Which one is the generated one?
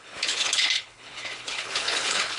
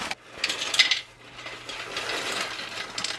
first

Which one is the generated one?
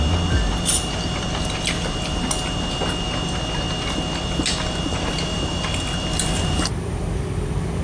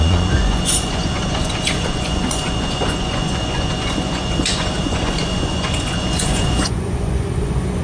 second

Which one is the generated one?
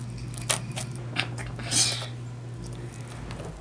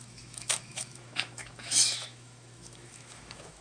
second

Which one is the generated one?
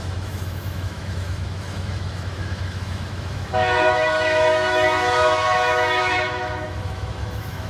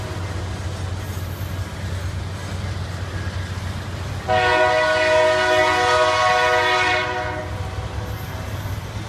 first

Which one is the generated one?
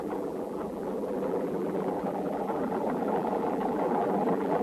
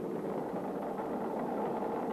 first